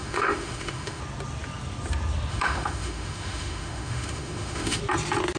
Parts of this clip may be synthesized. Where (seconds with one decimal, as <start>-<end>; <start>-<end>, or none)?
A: 0.0-1.0; 2.3-4.8